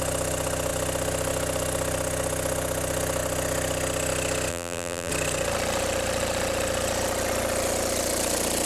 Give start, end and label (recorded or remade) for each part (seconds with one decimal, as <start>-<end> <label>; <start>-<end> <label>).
0.0-4.5 recorded; 4.5-5.1 remade; 5.1-8.7 recorded

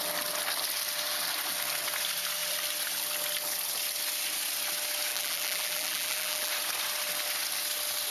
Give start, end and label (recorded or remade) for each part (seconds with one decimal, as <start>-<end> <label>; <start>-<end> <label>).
0.0-5.1 recorded; 5.1-6.5 remade; 6.5-8.1 recorded

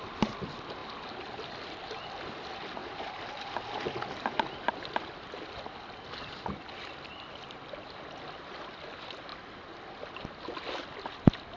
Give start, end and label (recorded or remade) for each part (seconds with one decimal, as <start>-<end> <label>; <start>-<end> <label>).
0.0-11.6 recorded